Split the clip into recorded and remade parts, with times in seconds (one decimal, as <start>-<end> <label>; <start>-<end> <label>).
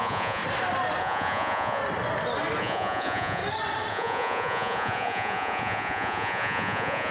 0.0-0.4 remade; 0.4-1.0 recorded; 1.0-1.8 remade; 1.8-2.6 recorded; 2.6-3.4 remade; 3.4-3.9 recorded; 3.9-7.1 remade